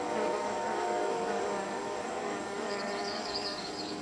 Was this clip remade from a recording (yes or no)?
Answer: yes